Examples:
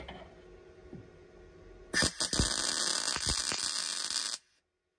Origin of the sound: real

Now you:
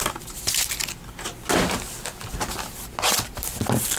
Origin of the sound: real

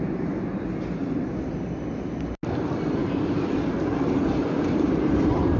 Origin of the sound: real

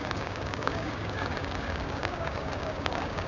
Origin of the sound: fake